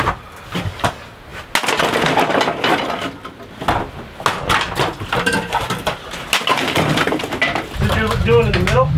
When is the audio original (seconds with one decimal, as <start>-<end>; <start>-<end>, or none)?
0.0-9.0